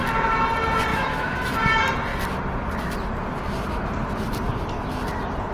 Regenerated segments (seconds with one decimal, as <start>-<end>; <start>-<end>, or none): 0.9-1.5